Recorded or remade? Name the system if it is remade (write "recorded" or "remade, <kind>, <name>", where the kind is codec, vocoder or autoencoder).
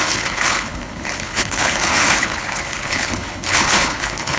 remade, codec, HILCodec